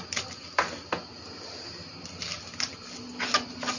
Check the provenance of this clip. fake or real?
real